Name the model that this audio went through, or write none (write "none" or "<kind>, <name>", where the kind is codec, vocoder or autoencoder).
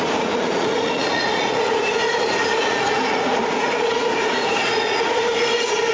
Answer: vocoder, Vocos